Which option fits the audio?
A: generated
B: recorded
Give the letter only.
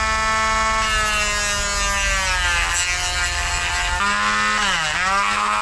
B